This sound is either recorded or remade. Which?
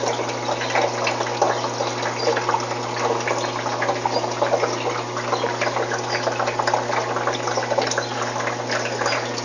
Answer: recorded